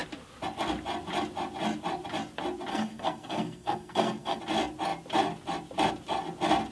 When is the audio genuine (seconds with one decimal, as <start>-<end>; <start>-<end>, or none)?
0.0-2.7; 4.4-6.7